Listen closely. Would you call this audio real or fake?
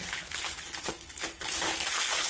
fake